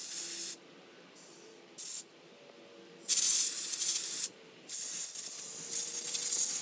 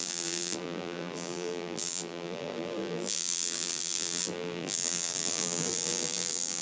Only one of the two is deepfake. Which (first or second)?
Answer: second